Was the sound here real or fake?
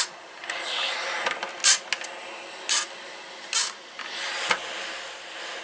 real